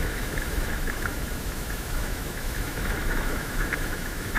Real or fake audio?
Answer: fake